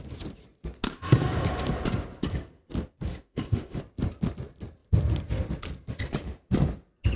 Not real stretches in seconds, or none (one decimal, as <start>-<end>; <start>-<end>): 3.1-3.8